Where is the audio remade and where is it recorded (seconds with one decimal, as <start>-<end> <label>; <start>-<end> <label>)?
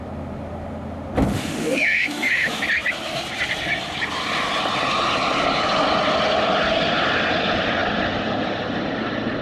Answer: 0.0-1.3 recorded; 1.3-2.5 remade; 2.5-9.4 recorded